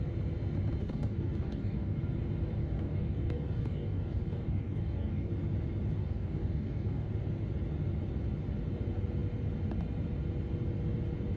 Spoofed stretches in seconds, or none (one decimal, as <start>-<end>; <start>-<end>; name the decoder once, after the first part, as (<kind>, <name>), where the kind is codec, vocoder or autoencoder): 0.8-2.0 (codec, DAC); 2.6-5.3; 6.0-7.1